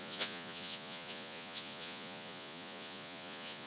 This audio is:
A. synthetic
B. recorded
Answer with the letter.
A